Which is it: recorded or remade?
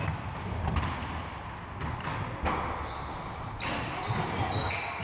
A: recorded